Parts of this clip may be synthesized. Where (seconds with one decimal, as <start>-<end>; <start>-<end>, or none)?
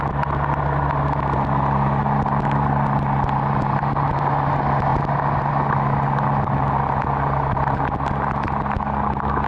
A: none